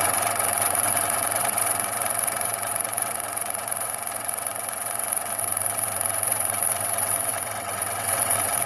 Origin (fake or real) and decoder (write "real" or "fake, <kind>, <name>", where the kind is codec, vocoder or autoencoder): fake, vocoder, WaveNeXt